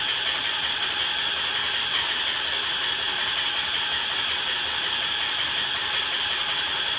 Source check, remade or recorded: recorded